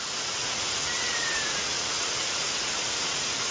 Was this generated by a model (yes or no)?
yes